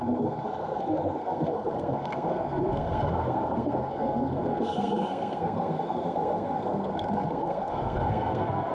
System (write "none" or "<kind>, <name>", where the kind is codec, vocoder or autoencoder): codec, SNAC